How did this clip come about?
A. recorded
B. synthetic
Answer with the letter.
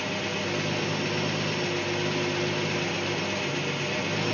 A